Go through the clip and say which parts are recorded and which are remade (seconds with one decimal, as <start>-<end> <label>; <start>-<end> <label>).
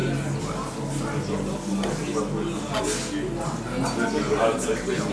0.0-5.1 recorded